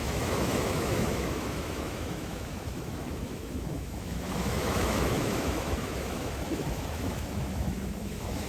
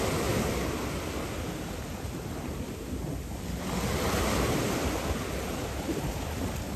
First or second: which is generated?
first